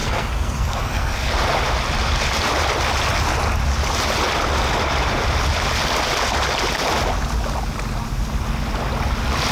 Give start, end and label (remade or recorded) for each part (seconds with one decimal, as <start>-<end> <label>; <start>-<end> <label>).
0.0-1.3 remade; 1.3-9.5 recorded